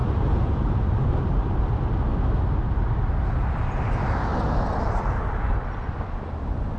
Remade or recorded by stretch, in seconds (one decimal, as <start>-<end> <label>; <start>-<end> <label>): 0.0-1.6 remade; 1.6-6.8 recorded